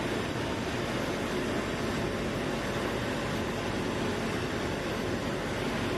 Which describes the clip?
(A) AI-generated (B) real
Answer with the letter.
B